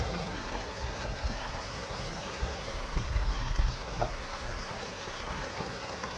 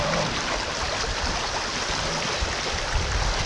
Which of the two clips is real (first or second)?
second